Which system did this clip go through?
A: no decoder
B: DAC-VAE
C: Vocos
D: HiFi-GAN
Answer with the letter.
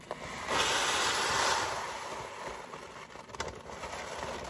A